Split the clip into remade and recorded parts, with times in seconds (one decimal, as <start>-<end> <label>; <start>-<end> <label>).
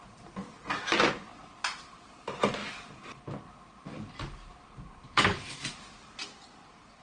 0.0-7.0 recorded